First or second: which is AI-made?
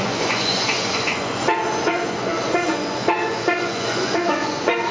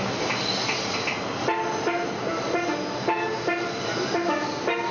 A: first